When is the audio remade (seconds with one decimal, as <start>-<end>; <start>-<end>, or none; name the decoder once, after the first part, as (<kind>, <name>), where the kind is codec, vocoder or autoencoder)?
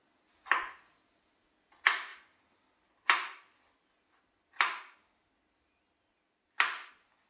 none